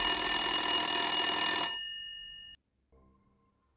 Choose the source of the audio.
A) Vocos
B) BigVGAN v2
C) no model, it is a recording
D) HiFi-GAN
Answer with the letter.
C